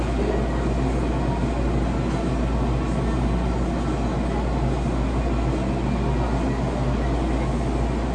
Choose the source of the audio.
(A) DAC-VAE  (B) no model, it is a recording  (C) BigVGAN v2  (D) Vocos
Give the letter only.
B